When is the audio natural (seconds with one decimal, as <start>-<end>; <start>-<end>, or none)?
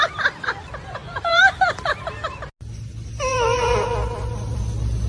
0.0-1.0; 1.9-3.3; 4.6-5.1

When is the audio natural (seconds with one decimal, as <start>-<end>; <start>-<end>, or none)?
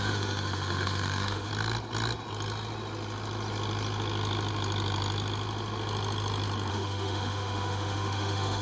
1.5-6.7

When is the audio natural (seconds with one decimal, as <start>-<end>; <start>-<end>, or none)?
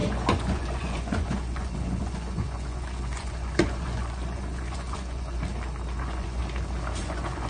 5.4-6.0; 6.4-7.0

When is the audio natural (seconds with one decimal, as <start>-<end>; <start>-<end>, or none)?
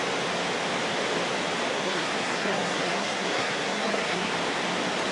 0.0-1.7; 4.3-5.1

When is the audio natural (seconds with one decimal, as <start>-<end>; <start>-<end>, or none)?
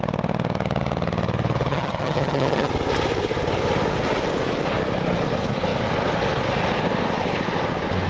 0.0-1.7; 2.7-8.1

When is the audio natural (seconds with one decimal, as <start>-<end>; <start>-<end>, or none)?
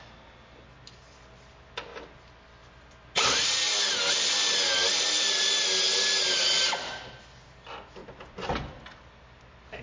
0.0-9.8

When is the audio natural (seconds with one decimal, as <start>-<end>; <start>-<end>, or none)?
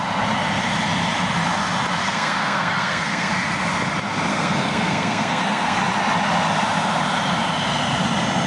0.0-2.0; 3.3-4.3; 5.8-8.5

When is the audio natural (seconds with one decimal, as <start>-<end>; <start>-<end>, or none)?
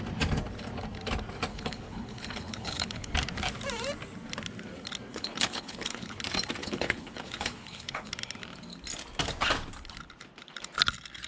0.0-1.5; 3.1-5.1; 6.1-6.6; 8.1-11.3